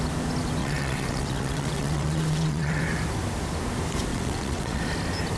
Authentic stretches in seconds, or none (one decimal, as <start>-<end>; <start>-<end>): 0.0-0.6; 2.8-4.1; 4.8-5.4